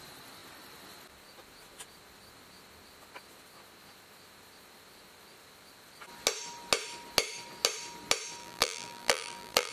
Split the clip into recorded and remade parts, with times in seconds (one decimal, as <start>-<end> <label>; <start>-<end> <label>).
0.0-8.4 recorded; 8.4-9.7 remade